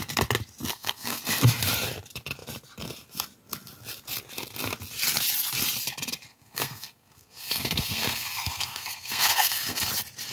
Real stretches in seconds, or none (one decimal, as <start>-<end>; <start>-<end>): 0.0-0.7; 1.2-6.3; 9.9-10.3